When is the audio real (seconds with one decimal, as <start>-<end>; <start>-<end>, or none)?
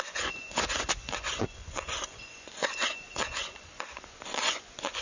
none